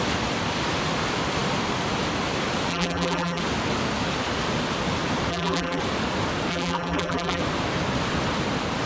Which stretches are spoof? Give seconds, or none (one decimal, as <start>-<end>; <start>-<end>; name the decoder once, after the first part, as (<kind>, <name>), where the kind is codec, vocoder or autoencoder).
2.7-3.4 (vocoder, BigVGAN v2); 5.3-5.8; 6.5-7.4